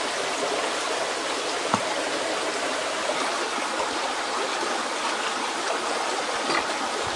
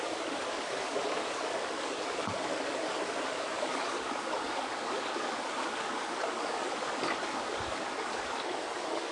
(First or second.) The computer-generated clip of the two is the second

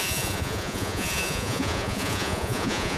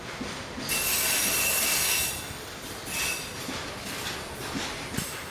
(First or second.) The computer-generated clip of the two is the first